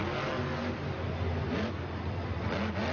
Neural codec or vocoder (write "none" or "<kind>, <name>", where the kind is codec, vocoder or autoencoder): none